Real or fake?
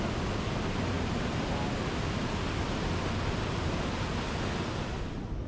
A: real